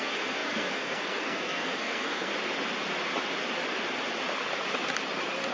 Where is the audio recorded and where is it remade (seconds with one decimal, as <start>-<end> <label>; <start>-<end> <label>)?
0.0-2.3 remade; 2.3-5.5 recorded